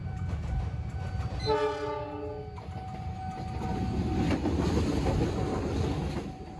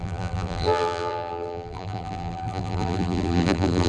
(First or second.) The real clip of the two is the first